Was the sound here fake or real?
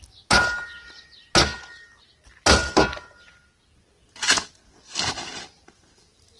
real